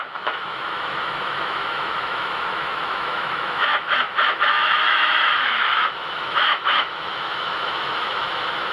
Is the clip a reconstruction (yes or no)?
yes